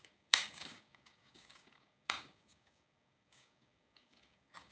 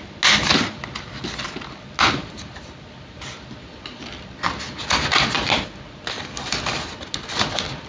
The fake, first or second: first